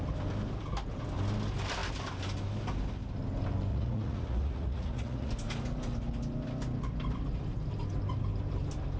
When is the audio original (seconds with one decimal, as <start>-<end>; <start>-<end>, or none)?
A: 0.0-3.7; 5.3-9.0